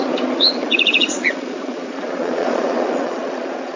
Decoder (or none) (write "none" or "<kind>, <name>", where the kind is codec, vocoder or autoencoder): vocoder, Vocos